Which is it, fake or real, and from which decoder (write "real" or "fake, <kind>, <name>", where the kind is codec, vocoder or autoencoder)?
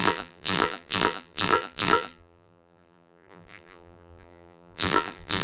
fake, vocoder, BigVGAN v2